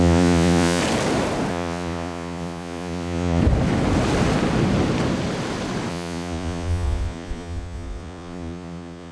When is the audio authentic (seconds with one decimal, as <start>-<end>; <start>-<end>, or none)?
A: 0.8-1.5; 3.4-5.9